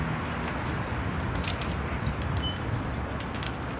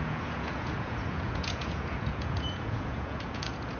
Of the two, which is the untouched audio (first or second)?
first